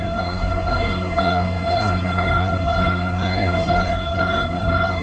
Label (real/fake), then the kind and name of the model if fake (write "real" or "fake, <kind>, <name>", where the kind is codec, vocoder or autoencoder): fake, codec, SNAC